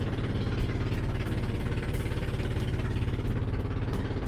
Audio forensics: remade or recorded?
remade